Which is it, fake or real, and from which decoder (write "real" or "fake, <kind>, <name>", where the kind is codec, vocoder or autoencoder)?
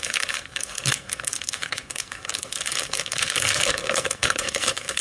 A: fake, codec, SNAC